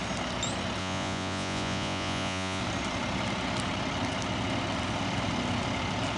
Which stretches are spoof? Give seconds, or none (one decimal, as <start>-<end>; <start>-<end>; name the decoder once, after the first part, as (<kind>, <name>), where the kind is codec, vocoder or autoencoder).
0.8-2.6 (vocoder, Vocos)